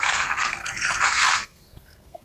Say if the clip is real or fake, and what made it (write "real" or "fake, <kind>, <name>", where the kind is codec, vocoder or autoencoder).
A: fake, codec, SNAC